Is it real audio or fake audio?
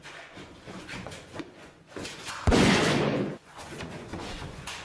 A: fake